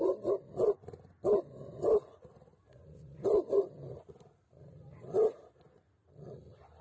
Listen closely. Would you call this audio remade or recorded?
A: recorded